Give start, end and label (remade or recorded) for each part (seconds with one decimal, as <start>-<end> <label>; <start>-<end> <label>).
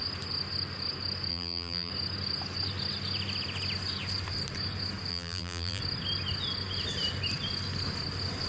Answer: 0.0-1.3 recorded; 1.3-1.9 remade; 1.9-5.1 recorded; 5.1-5.8 remade; 5.8-8.5 recorded